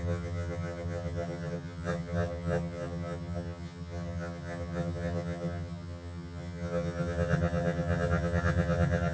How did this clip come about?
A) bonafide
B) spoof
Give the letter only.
B